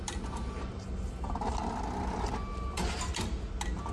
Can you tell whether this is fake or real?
real